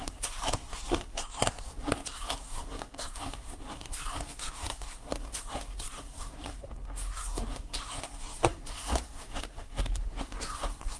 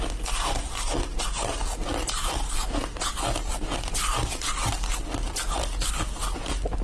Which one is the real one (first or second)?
second